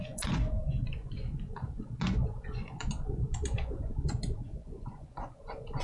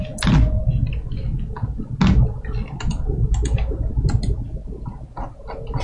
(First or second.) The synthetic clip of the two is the first